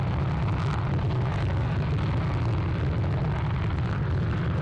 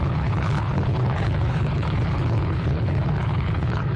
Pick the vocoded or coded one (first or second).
second